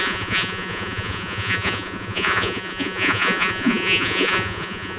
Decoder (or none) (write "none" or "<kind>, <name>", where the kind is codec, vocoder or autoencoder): vocoder, Vocos